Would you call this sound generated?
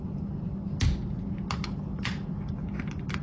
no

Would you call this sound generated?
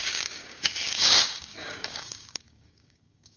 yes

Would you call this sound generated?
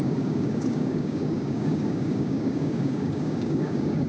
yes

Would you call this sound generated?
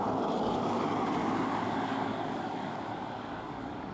yes